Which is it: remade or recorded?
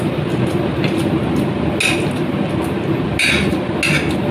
recorded